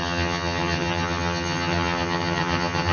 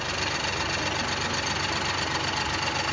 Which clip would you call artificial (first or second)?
first